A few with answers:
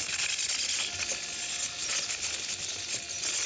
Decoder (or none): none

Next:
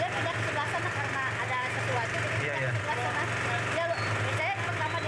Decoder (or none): none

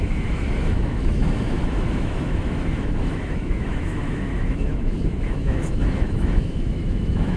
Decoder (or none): autoencoder, DAC-VAE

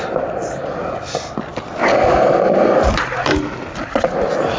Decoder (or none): none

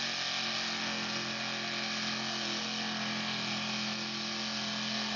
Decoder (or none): none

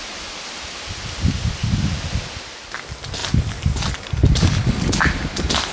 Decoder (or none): none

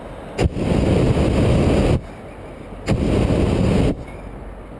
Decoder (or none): none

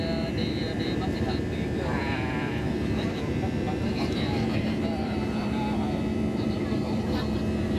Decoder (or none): vocoder, BigVGAN v2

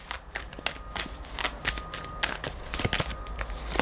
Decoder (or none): none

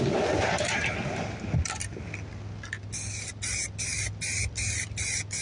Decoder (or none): none